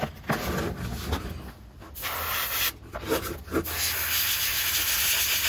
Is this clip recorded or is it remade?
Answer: recorded